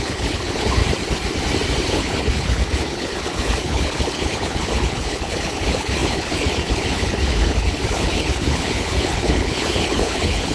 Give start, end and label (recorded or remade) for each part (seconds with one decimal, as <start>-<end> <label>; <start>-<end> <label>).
0.0-0.8 remade; 0.8-1.9 recorded; 1.9-10.5 remade